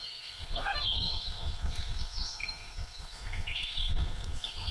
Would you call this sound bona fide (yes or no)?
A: no